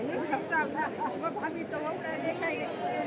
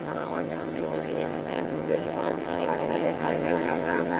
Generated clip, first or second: second